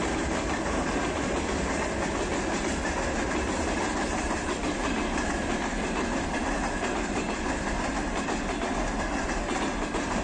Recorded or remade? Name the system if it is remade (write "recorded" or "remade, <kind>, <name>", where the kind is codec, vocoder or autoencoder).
recorded